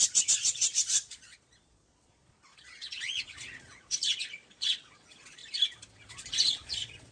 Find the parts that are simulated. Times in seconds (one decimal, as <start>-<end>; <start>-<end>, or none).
0.0-5.4; 6.1-7.1

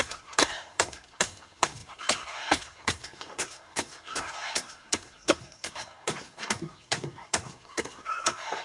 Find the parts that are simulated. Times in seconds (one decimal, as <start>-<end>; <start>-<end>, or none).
0.0-8.6

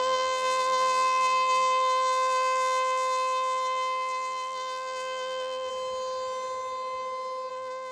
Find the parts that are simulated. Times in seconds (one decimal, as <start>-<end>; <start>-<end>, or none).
0.0-5.7; 7.5-7.9

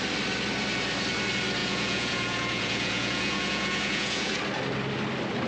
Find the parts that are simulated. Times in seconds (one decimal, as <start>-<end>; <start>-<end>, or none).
1.6-4.4

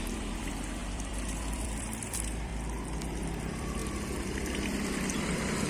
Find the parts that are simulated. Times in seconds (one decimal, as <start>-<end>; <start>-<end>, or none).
0.0-2.5; 3.4-5.7

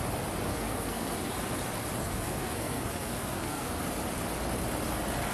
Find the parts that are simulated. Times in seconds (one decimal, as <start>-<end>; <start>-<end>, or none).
0.5-1.3; 2.0-3.8